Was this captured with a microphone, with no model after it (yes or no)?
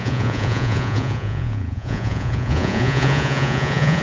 no